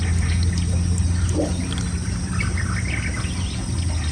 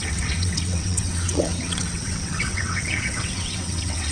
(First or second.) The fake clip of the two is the second